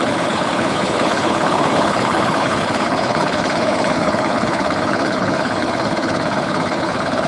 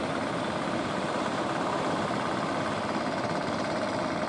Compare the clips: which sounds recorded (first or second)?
second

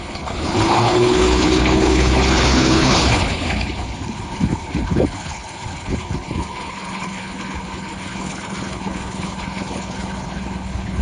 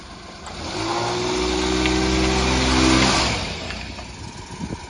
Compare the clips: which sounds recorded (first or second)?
second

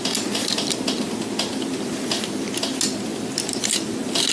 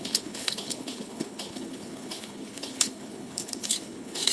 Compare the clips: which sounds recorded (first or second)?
first